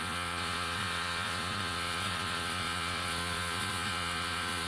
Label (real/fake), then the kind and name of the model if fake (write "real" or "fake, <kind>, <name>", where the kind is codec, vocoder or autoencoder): fake, vocoder, Vocos